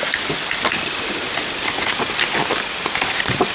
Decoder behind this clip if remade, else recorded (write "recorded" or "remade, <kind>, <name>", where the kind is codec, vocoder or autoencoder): recorded